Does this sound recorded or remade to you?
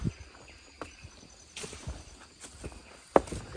recorded